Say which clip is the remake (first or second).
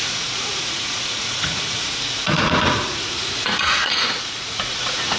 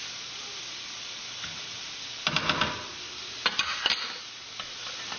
first